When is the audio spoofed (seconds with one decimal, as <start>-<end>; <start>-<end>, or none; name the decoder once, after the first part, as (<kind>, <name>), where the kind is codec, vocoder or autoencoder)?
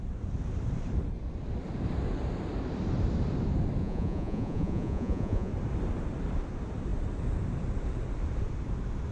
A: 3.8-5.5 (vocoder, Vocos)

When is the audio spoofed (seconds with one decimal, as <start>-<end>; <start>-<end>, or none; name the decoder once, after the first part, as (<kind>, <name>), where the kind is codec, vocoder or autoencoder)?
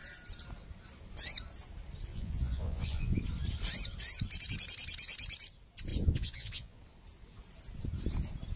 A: 2.1-3.2 (vocoder, Vocos); 5.9-6.8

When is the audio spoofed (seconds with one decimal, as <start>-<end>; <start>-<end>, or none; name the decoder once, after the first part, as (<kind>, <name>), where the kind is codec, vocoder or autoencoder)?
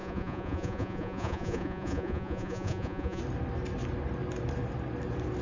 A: 0.0-3.2 (vocoder, Vocos)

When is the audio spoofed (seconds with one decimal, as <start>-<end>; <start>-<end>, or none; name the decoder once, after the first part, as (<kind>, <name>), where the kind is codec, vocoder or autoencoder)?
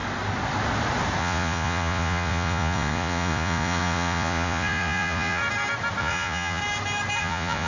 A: 1.2-5.4 (vocoder, Vocos); 6.0-6.6; 7.2-7.7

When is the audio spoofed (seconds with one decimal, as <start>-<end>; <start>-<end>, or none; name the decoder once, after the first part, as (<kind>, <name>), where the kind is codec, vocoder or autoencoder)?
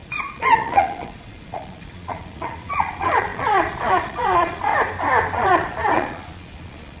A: 0.0-4.7 (vocoder, Vocos); 5.3-7.0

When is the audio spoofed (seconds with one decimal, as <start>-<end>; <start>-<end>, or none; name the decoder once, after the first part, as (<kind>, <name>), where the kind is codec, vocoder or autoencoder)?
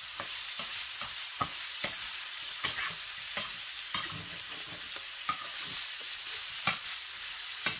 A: 0.7-2.8 (vocoder, Vocos); 5.5-6.1; 6.5-7.2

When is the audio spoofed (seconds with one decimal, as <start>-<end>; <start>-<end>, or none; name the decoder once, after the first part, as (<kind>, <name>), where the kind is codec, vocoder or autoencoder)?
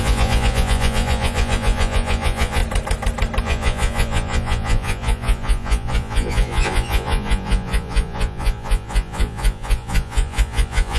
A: 0.0-2.6 (vocoder, Vocos); 3.4-11.0